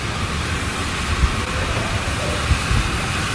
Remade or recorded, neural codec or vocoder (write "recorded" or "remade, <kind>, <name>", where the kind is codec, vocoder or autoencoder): recorded